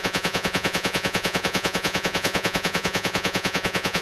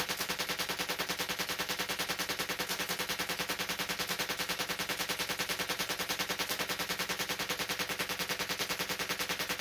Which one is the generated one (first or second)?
first